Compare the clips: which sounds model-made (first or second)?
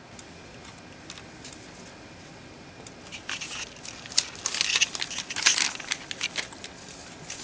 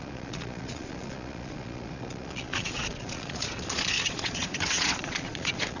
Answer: second